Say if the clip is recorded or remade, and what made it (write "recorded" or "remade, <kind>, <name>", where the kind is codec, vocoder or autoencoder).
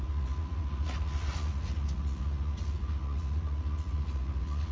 remade, vocoder, Vocos